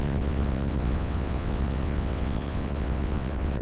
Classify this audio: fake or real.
fake